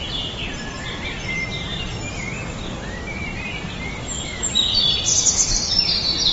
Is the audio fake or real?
fake